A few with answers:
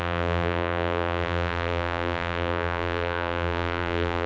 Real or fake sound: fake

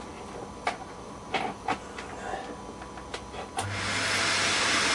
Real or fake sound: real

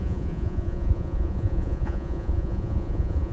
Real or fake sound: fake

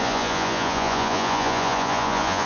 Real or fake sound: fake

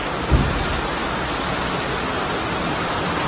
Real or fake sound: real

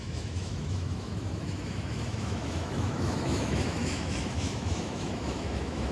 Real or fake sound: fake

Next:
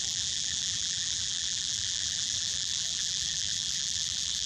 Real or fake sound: fake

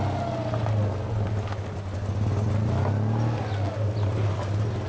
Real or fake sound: real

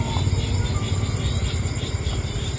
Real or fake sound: real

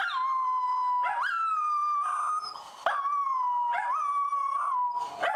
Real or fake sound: real